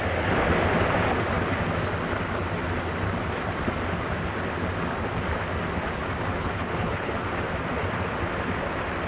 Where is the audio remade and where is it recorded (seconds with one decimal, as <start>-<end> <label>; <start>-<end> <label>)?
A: 0.0-6.3 recorded; 6.3-7.1 remade; 7.1-9.1 recorded